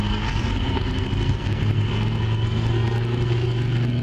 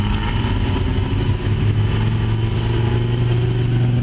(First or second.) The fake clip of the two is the first